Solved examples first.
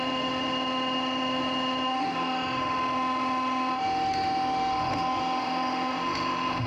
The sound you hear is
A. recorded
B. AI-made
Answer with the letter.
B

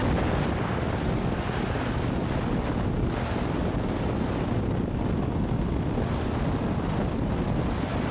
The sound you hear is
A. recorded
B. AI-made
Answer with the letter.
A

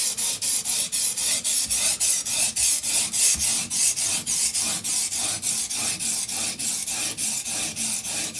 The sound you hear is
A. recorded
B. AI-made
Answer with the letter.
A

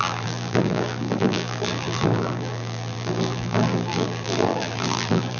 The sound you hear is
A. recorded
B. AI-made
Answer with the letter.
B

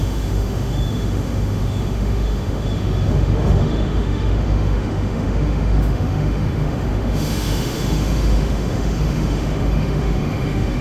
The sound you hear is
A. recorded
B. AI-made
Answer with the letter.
B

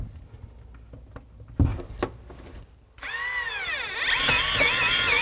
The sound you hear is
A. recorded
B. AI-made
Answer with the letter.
A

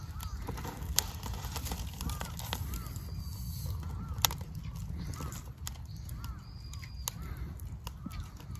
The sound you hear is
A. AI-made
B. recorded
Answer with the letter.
B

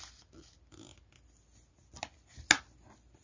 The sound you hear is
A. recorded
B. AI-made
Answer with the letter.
A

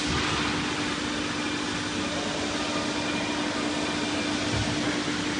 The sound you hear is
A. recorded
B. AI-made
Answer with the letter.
A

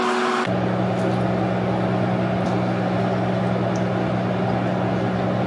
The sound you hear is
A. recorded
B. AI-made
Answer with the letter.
A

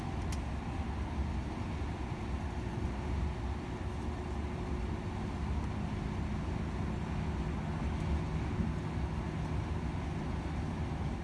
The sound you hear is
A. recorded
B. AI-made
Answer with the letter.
A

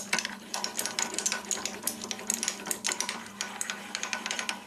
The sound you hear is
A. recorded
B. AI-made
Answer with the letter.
A